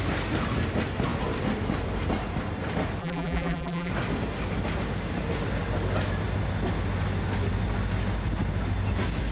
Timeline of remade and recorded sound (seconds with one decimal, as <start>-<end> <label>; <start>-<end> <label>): 0.0-3.0 recorded; 3.0-3.9 remade; 3.9-9.3 recorded